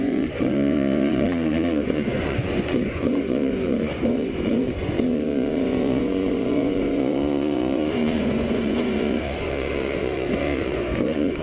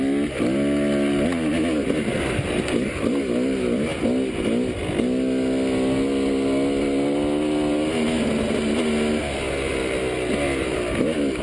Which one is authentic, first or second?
second